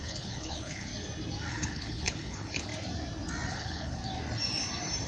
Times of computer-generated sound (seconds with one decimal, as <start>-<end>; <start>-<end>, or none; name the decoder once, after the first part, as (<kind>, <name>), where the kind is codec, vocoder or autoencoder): 0.0-0.9 (codec, HILCodec); 1.5-2.7; 3.5-4.0